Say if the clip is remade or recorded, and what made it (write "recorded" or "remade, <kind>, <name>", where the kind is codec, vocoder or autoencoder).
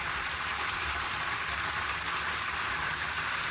remade, vocoder, BigVGAN v2